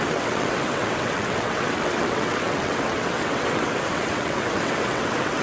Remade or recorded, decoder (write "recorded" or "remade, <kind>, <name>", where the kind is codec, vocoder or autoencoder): remade, vocoder, WaveNeXt